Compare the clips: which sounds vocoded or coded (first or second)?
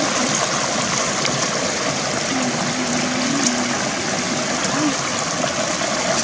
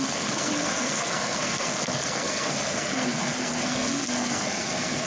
second